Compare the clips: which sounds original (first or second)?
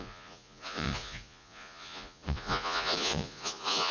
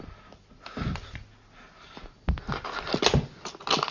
second